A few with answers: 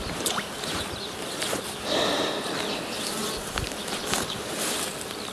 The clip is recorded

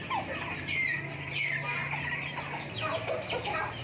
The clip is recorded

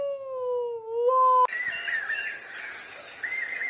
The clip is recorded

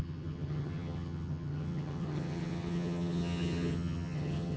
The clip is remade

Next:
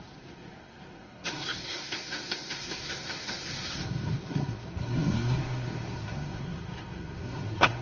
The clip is remade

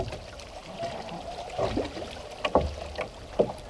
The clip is recorded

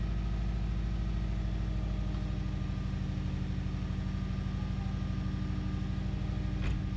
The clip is recorded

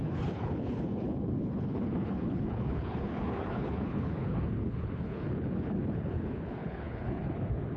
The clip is remade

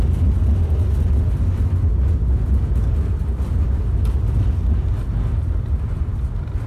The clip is recorded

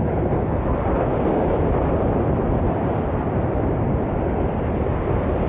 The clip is recorded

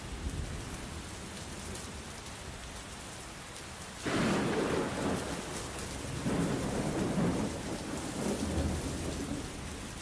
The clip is recorded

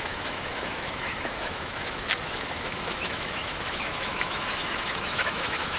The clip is remade